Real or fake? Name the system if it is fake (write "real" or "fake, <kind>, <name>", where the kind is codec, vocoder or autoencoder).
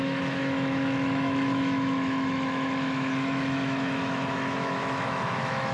fake, autoencoder, DAC-VAE